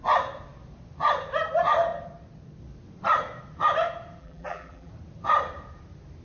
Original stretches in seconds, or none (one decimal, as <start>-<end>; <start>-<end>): 0.0-4.2; 4.9-6.2